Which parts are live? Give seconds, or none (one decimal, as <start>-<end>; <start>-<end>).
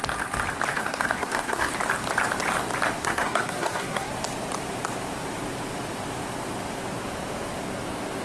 0.0-0.7; 1.7-3.0; 4.1-8.2